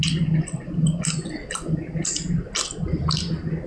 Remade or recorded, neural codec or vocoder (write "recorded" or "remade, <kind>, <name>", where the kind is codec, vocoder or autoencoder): recorded